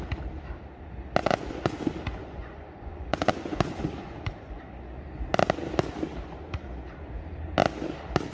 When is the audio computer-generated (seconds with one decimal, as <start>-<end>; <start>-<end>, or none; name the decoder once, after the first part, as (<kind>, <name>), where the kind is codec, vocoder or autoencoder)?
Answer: 1.2-1.7 (vocoder, Vocos); 2.2-4.6